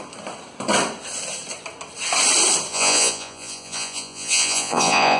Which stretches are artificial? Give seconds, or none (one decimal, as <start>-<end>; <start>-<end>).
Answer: 2.7-5.2